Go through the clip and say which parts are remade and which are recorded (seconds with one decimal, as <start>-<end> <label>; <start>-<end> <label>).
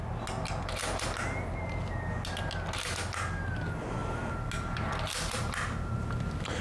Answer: 0.0-6.6 recorded